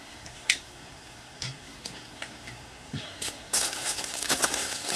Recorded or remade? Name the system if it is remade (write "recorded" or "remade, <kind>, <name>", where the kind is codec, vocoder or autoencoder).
remade, codec, SNAC